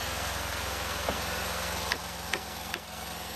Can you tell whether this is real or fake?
fake